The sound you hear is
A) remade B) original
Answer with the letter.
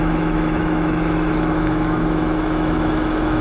A